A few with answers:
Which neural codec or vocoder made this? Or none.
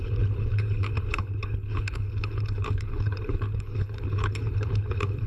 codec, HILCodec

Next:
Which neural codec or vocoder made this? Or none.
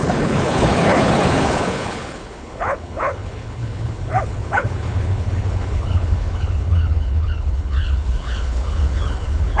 codec, HILCodec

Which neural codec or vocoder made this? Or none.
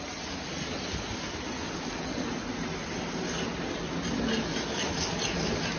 none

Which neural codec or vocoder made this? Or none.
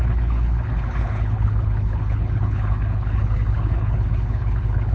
codec, HILCodec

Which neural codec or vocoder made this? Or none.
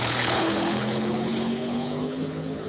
codec, HILCodec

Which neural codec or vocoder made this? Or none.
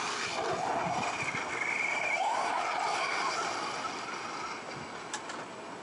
none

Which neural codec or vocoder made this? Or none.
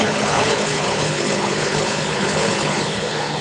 codec, HILCodec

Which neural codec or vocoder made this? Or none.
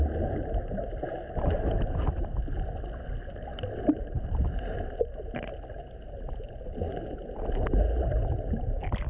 none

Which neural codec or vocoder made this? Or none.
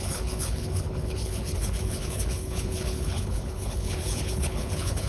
codec, HILCodec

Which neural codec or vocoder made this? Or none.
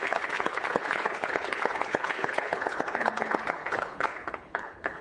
codec, HILCodec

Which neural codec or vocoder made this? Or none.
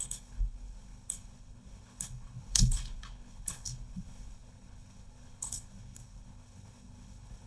codec, HILCodec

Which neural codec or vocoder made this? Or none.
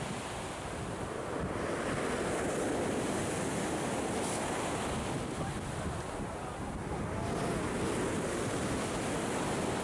none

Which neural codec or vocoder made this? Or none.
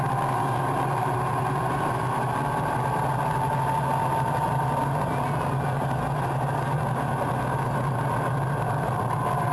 none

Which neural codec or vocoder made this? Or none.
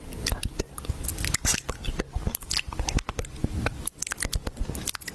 none